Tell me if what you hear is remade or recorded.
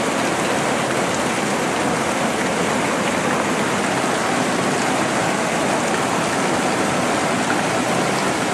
recorded